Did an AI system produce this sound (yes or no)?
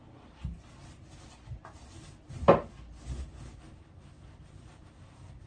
no